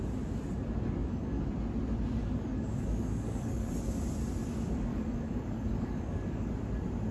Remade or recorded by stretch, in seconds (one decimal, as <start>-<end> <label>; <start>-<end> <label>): 0.0-1.0 recorded; 1.0-1.5 remade; 1.5-2.2 recorded; 2.2-3.7 remade; 3.7-4.9 recorded; 4.9-6.5 remade; 6.5-7.1 recorded